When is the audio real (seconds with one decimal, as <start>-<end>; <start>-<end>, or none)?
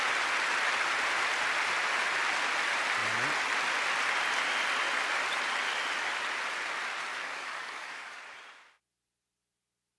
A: 0.0-7.1; 8.2-10.0